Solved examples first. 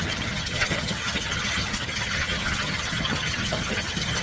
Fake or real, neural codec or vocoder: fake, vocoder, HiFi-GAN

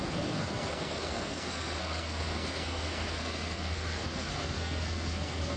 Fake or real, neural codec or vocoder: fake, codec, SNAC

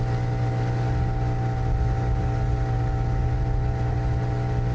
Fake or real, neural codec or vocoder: real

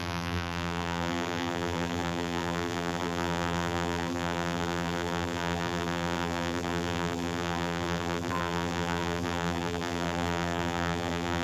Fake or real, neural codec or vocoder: fake, vocoder, BigVGAN v2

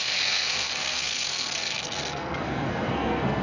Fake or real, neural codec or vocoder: fake, codec, SNAC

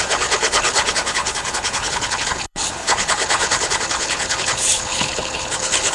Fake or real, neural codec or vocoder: fake, codec, HILCodec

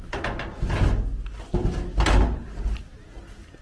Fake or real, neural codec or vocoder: real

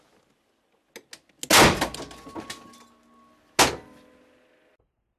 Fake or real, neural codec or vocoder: real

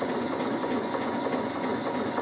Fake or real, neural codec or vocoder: fake, vocoder, Vocos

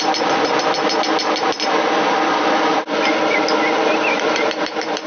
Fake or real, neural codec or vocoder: real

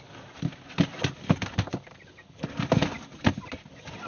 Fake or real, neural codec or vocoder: real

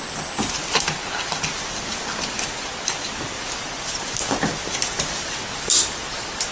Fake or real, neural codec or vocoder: real